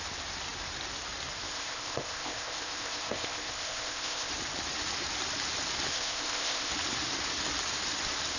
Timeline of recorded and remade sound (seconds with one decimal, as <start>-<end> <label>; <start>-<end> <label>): 0.0-1.5 recorded; 1.5-4.3 remade; 4.3-5.9 recorded; 5.9-6.7 remade; 6.7-8.4 recorded